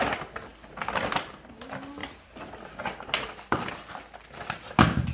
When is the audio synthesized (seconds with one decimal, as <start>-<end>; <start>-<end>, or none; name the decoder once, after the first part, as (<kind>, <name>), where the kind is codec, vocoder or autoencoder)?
0.5-1.5 (vocoder, BigVGAN v2); 2.0-3.9